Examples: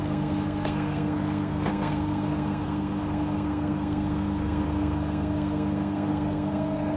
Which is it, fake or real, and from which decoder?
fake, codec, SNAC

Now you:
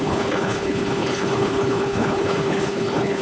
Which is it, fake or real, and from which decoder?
fake, codec, HILCodec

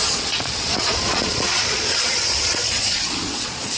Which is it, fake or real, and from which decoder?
fake, vocoder, Vocos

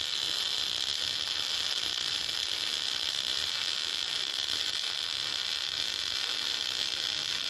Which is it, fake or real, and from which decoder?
real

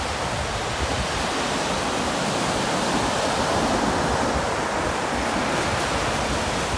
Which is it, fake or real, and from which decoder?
real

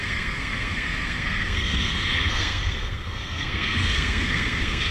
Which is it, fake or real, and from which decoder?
fake, codec, SNAC